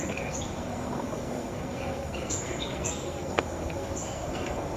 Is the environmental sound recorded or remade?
remade